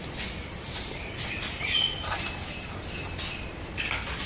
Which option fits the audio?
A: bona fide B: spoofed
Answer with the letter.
A